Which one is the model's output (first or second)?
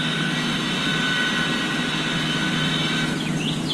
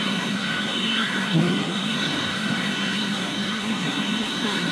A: second